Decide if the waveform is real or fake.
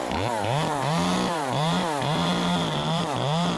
fake